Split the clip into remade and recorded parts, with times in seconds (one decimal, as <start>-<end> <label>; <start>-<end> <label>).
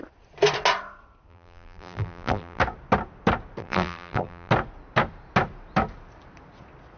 0.0-1.3 recorded; 1.3-2.6 remade; 2.6-3.6 recorded; 3.6-4.5 remade; 4.5-7.0 recorded